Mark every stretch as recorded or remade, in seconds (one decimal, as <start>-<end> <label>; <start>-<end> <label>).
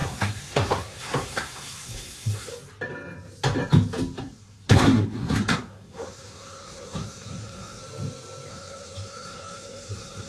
0.0-2.5 remade; 2.5-4.2 recorded; 4.2-7.8 remade; 7.8-8.5 recorded; 8.5-10.3 remade